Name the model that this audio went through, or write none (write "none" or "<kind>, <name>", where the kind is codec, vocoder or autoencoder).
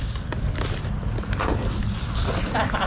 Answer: none